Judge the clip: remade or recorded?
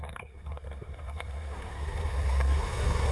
remade